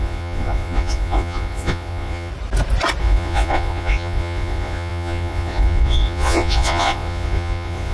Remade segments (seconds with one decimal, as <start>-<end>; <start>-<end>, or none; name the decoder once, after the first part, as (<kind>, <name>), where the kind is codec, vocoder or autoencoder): 0.0-2.3 (vocoder, Vocos); 3.0-7.9